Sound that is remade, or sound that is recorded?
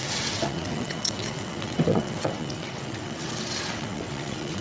remade